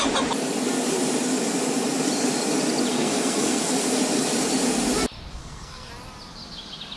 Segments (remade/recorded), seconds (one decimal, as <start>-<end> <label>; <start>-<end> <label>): 0.0-2.9 recorded; 2.9-3.8 remade; 3.8-5.4 recorded; 5.4-5.9 remade; 5.9-7.0 recorded